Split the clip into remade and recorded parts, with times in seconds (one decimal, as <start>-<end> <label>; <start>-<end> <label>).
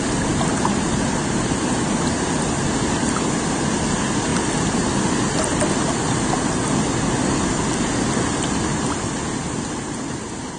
0.0-10.6 recorded